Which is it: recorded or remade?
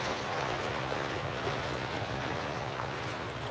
remade